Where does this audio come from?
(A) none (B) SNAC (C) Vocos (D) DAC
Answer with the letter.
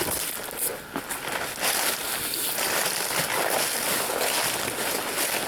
A